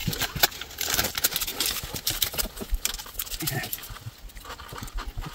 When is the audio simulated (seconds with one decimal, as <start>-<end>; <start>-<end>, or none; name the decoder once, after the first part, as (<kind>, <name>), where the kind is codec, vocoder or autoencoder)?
none